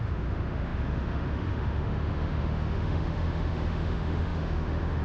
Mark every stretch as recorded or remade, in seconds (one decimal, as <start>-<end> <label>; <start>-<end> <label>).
0.0-5.0 remade